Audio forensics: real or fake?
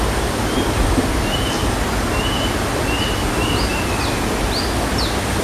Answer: real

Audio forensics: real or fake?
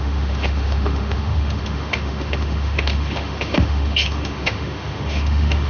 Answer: fake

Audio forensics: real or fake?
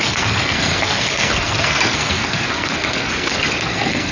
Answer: fake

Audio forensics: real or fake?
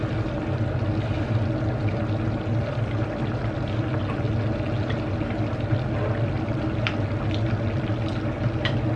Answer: real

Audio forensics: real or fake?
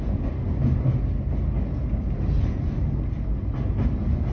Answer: real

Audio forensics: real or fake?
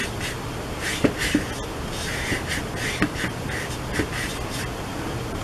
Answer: real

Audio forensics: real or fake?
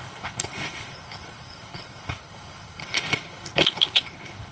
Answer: fake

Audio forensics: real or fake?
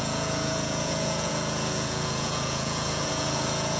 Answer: fake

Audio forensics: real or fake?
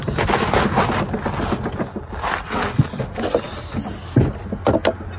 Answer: real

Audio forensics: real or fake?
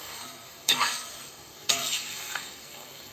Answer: fake